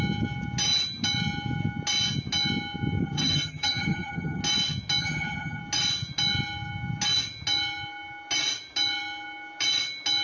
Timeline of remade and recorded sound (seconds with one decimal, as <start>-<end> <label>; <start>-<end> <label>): 0.0-3.0 recorded; 3.0-4.4 remade; 4.4-5.0 recorded; 5.0-5.6 remade; 5.6-10.2 recorded